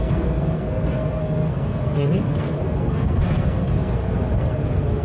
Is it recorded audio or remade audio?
remade